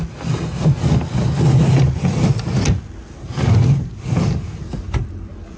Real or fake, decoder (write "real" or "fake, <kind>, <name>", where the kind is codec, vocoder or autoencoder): real